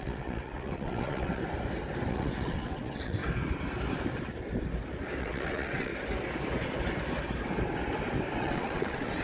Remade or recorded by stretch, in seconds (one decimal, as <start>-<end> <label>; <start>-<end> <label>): 0.0-1.4 remade; 1.4-2.1 recorded; 2.1-3.2 remade; 3.2-5.2 recorded; 5.2-5.9 remade; 5.9-8.4 recorded; 8.4-9.2 remade